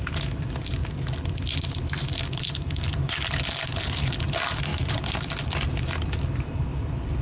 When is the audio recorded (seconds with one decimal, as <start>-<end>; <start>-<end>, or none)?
0.8-2.2